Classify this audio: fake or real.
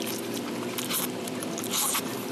real